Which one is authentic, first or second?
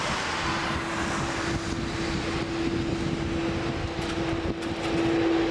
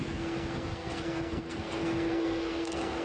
first